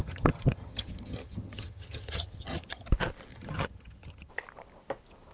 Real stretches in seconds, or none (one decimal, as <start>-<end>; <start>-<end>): 2.9-3.3; 4.3-5.3